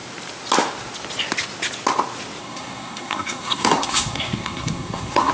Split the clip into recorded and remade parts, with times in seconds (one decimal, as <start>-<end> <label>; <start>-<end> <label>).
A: 0.0-2.4 recorded; 2.4-5.3 remade